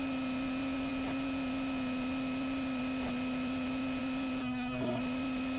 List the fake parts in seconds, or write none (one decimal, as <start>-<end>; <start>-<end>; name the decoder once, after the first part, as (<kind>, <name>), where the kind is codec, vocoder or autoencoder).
4.4-5.0 (codec, SNAC)